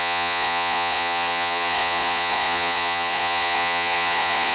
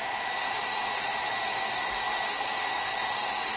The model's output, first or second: first